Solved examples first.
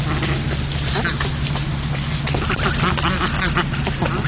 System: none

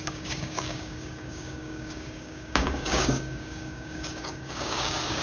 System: codec, DAC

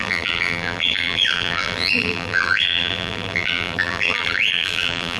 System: vocoder, BigVGAN v2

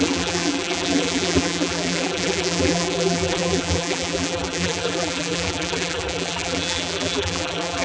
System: vocoder, BigVGAN v2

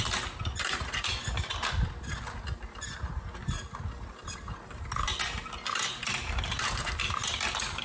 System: none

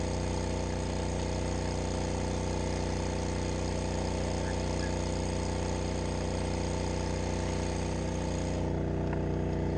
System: none